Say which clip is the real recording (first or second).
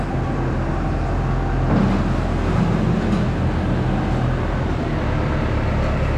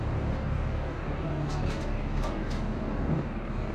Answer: first